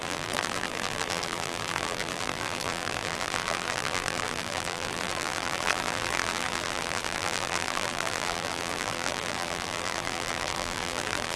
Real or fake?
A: fake